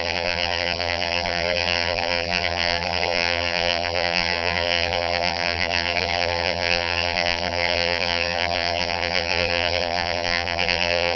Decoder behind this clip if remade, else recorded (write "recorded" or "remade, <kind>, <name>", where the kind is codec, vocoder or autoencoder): remade, vocoder, BigVGAN v2